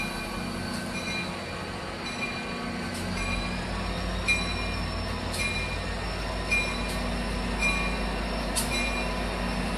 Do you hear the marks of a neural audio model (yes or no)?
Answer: no